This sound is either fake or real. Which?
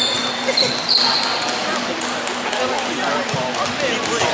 real